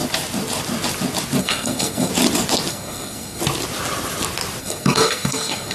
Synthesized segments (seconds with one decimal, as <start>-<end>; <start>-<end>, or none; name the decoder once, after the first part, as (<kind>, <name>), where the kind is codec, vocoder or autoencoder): 1.4-2.1 (codec, SNAC); 2.7-3.4; 4.6-5.7